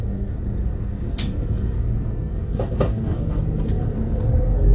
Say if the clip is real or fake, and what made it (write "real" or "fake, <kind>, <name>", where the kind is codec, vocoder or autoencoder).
fake, codec, SNAC